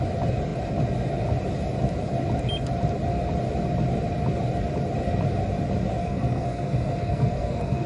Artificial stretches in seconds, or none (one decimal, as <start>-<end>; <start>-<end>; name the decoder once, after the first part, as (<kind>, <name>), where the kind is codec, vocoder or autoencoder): 6.0-7.9 (codec, SNAC)